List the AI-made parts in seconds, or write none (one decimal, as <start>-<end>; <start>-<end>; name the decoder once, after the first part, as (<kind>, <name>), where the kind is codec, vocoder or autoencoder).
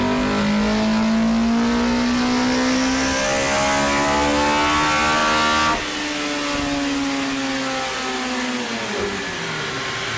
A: none